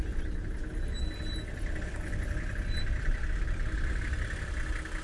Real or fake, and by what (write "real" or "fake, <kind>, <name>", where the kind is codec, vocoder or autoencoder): real